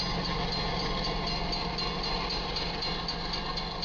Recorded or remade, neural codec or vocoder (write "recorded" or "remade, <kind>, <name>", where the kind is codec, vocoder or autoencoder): recorded